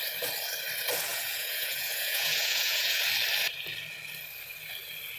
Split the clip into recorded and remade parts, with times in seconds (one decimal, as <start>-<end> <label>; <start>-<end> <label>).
0.0-1.1 recorded; 1.1-3.0 remade; 3.0-5.2 recorded